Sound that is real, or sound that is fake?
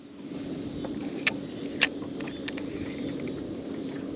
real